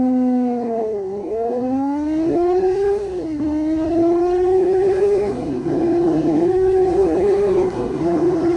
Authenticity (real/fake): fake